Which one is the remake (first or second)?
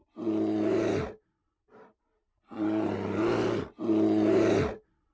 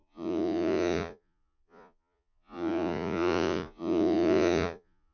second